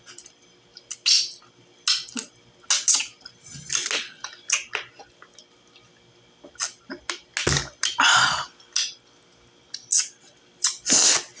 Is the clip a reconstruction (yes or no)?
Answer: no